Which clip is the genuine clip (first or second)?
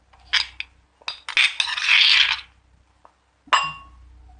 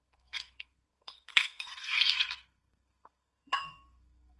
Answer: first